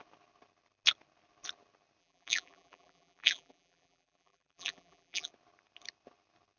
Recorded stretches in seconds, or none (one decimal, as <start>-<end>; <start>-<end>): 0.0-2.0; 5.3-6.6